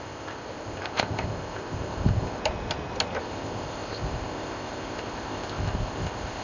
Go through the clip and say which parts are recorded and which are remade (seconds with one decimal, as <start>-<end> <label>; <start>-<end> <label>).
0.0-2.4 remade; 2.4-3.2 recorded; 3.2-6.4 remade